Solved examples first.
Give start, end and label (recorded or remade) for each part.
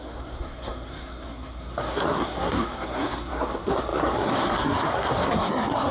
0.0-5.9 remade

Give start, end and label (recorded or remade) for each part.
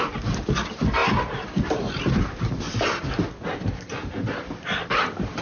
0.0-5.4 recorded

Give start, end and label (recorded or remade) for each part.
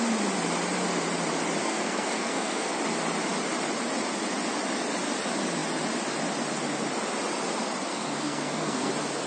0.0-1.6 recorded; 1.6-2.7 remade; 2.7-7.9 recorded; 7.9-8.9 remade; 8.9-9.3 recorded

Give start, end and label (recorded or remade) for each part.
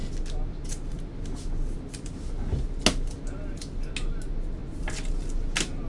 0.0-5.9 recorded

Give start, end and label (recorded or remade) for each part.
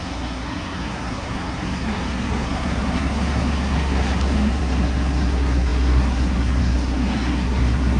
0.0-8.0 remade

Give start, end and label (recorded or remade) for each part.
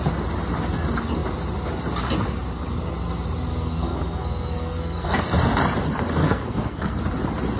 0.0-3.5 recorded; 3.5-5.2 remade; 5.2-6.2 recorded; 6.2-7.0 remade; 7.0-7.6 recorded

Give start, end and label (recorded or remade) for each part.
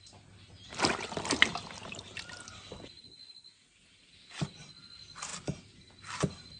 0.0-6.6 recorded